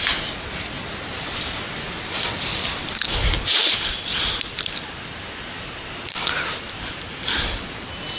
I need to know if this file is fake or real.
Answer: real